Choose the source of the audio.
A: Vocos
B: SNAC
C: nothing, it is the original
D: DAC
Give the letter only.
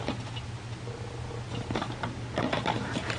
C